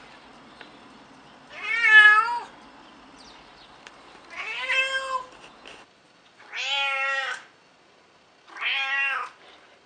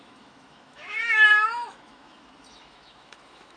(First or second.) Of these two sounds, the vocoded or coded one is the second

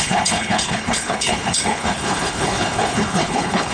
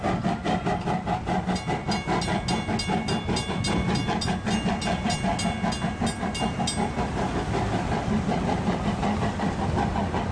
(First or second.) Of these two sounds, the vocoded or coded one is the first